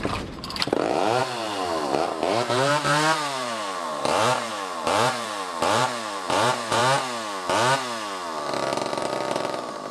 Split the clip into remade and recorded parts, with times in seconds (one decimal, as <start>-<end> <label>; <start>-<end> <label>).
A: 0.0-6.8 remade; 6.8-8.9 recorded; 8.9-9.9 remade